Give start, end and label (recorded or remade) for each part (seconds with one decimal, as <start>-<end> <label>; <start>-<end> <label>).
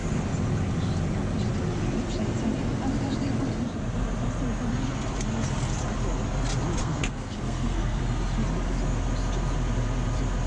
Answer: 0.0-6.8 recorded; 6.8-8.0 remade; 8.0-10.5 recorded